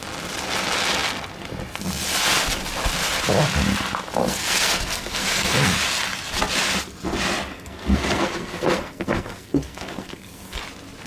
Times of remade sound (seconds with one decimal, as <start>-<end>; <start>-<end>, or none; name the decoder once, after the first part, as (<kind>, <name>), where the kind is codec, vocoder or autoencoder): 4.2-5.8 (codec, SNAC); 7.5-10.6